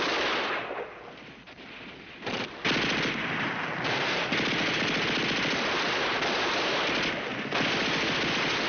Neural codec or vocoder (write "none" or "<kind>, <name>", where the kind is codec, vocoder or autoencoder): none